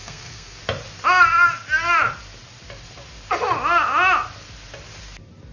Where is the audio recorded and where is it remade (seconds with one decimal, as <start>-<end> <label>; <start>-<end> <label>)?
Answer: 0.0-0.6 remade; 0.6-5.5 recorded